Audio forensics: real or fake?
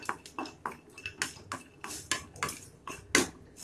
real